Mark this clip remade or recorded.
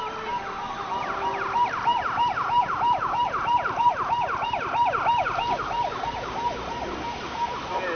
recorded